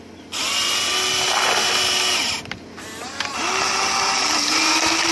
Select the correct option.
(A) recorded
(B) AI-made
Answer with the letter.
A